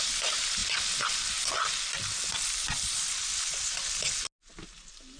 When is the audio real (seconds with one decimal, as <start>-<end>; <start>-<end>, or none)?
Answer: 0.0-5.2

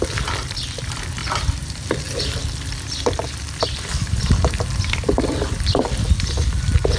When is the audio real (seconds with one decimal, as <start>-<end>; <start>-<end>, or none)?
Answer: 0.0-7.0